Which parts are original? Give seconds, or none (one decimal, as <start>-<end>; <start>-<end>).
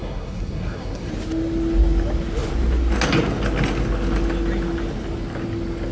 1.1-5.9